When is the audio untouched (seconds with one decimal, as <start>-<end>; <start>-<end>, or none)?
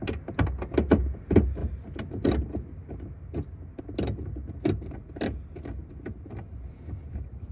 0.0-7.5